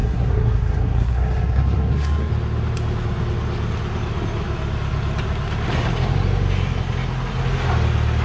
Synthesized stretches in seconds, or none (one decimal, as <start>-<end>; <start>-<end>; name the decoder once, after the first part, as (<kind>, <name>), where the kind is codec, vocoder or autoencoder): 0.0-2.3 (codec, SNAC)